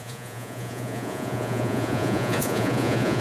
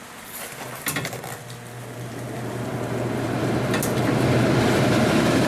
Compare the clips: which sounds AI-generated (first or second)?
first